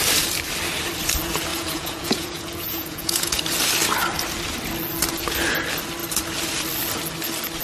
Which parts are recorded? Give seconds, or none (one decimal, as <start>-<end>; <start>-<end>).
0.0-1.5; 3.4-7.6